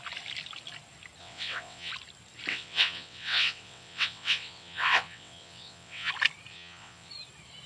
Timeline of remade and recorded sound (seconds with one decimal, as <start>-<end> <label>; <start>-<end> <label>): 0.0-1.2 recorded; 1.2-1.9 remade; 1.9-2.5 recorded; 2.5-6.1 remade; 6.1-6.5 recorded; 6.5-7.1 remade; 7.1-7.7 recorded